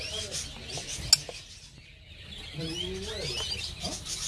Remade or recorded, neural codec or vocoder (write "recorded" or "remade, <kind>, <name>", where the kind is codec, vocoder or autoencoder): recorded